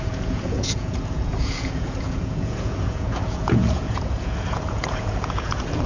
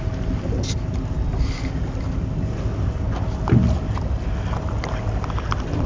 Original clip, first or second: second